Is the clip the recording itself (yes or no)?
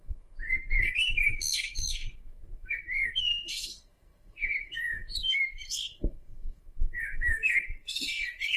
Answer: no